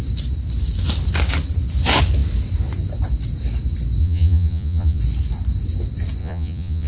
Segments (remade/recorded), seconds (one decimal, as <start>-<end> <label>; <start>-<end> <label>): 0.0-4.0 recorded; 4.0-5.0 remade; 5.0-6.2 recorded; 6.2-6.9 remade